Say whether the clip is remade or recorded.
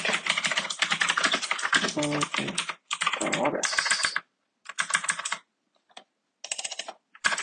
recorded